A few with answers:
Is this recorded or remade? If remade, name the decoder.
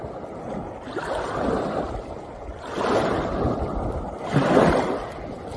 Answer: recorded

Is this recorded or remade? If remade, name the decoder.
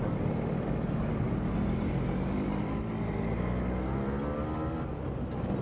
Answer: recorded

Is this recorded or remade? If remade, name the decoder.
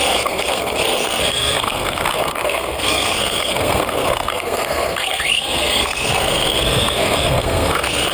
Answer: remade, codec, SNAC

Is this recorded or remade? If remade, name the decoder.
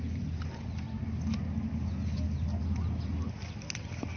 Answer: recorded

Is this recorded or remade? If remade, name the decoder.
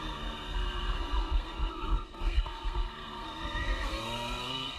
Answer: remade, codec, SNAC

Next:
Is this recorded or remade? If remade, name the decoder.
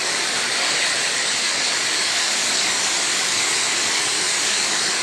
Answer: remade, codec, DAC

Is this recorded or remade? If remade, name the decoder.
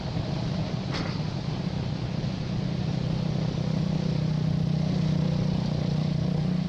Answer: recorded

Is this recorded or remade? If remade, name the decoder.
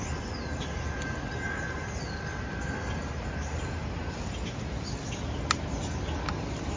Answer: recorded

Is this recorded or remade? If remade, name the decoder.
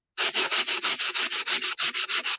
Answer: recorded